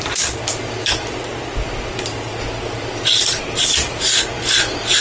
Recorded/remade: recorded